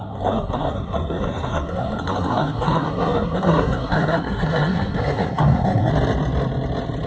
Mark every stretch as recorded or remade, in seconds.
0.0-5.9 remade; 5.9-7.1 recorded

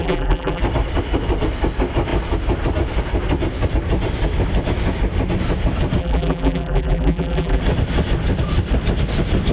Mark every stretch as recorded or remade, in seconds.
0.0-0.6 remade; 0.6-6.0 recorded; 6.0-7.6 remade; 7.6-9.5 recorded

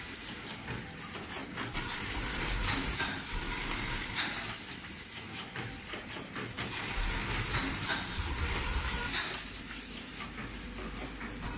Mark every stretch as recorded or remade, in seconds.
0.0-11.6 recorded